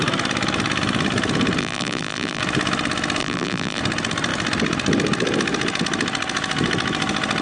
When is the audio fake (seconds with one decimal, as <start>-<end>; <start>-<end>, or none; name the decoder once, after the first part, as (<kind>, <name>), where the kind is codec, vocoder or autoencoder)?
1.6-2.4 (vocoder, BigVGAN v2); 3.2-3.8